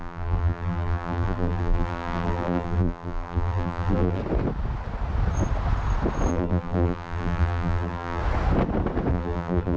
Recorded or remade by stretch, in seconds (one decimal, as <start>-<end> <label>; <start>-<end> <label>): 0.0-4.2 remade; 4.2-6.3 recorded; 6.3-8.2 remade; 8.2-9.1 recorded; 9.1-9.8 remade